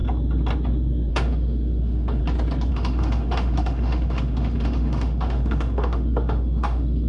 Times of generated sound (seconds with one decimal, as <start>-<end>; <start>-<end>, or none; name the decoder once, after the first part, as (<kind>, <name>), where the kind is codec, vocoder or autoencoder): 1.1-2.2 (autoencoder, DAC-VAE); 2.7-7.1